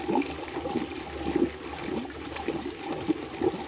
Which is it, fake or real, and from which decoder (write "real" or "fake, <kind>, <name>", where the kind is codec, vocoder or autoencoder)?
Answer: real